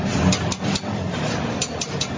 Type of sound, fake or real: real